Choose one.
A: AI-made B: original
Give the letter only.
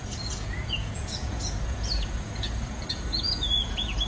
A